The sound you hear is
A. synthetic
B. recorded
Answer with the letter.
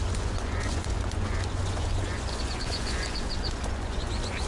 A